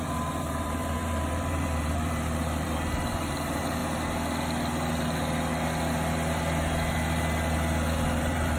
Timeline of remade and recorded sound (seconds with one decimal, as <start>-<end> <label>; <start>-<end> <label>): 0.0-3.8 remade; 3.8-8.2 recorded; 8.2-8.6 remade